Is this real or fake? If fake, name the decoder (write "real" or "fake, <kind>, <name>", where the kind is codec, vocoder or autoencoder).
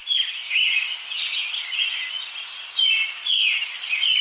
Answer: real